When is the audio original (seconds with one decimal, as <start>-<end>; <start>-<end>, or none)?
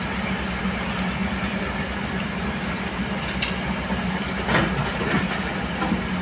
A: 0.0-6.2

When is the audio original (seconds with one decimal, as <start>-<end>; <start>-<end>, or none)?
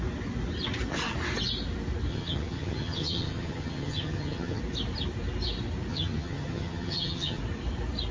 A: 0.0-2.1; 4.6-5.9; 7.4-8.1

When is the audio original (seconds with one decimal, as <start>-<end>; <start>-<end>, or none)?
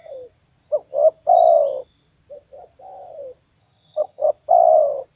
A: 0.0-3.6; 4.3-5.2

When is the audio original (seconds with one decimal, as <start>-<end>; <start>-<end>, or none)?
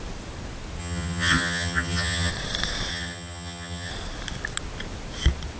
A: 0.0-0.8; 2.3-2.9; 3.9-5.6